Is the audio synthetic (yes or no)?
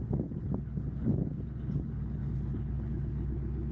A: yes